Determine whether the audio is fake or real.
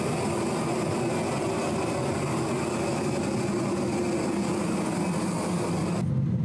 real